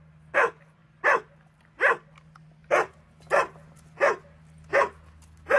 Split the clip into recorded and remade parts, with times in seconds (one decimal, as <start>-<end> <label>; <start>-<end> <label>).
0.0-5.6 recorded